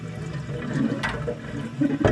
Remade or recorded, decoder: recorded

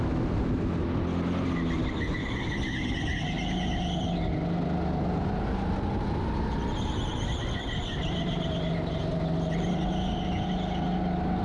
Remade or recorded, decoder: recorded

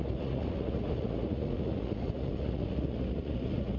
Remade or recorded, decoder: remade, vocoder, Vocos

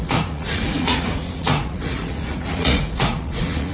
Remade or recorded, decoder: remade, vocoder, Vocos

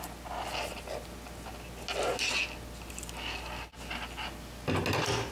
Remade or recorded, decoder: recorded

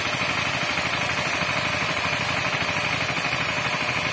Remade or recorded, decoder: recorded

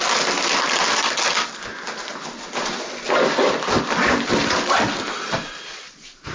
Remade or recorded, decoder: recorded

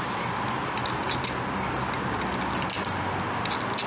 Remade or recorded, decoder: recorded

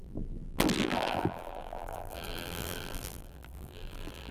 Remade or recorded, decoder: remade, vocoder, BigVGAN v2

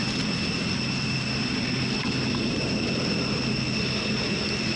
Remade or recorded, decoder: recorded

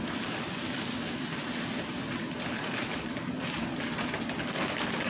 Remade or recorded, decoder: recorded